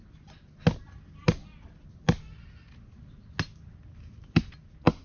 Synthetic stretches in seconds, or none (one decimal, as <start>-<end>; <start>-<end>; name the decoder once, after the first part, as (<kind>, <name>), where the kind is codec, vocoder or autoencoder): none